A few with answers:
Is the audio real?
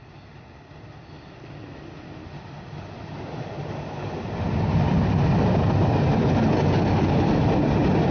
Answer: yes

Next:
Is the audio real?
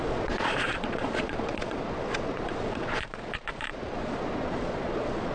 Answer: no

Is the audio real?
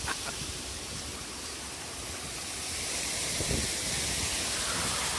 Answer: yes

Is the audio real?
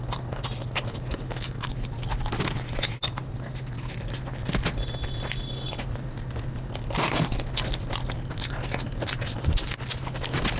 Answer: yes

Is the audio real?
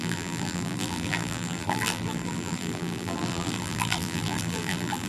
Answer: no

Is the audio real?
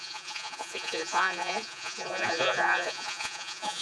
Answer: no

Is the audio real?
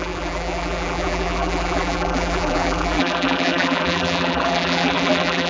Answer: no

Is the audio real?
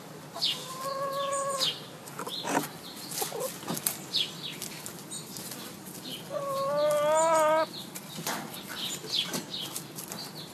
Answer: yes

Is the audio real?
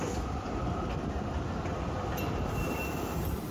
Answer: yes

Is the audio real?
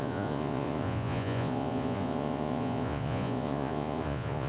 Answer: no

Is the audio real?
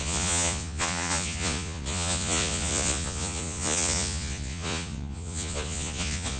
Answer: no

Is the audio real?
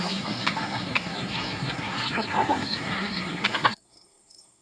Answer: no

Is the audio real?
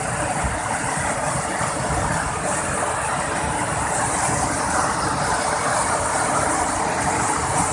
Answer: yes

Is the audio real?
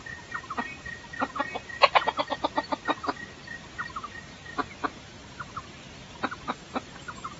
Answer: yes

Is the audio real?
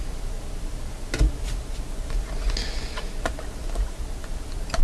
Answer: yes